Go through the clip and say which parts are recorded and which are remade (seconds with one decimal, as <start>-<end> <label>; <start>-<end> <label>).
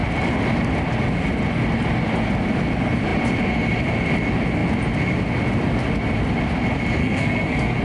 0.0-7.0 recorded; 7.0-7.8 remade